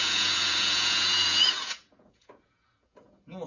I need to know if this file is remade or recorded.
remade